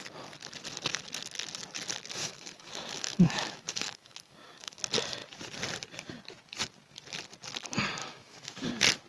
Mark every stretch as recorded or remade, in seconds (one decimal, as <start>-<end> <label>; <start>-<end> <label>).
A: 0.0-2.2 recorded; 2.2-4.8 remade; 4.8-8.0 recorded; 8.0-8.7 remade; 8.7-9.1 recorded